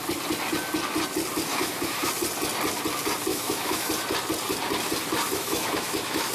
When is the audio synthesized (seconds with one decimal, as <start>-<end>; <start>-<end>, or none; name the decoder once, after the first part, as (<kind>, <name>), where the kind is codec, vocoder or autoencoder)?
1.5-2.1 (autoencoder, DAC-VAE); 3.3-3.9; 5.3-6.3